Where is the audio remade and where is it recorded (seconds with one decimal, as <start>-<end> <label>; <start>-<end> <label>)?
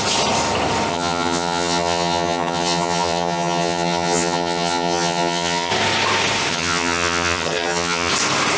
0.0-0.9 recorded; 0.9-5.7 remade; 5.7-6.5 recorded; 6.5-8.1 remade; 8.1-8.6 recorded